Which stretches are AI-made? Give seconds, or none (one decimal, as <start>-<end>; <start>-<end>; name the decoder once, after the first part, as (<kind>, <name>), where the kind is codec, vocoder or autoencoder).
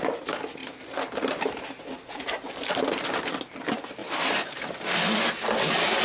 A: 0.6-3.1 (vocoder, BigVGAN v2); 4.0-4.7